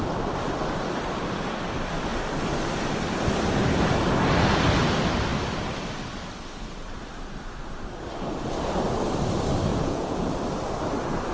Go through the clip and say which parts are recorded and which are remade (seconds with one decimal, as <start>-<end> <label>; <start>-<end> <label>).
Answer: 0.0-9.7 recorded; 9.7-10.3 remade; 10.3-11.3 recorded